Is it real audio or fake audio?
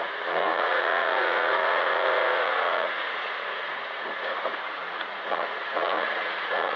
fake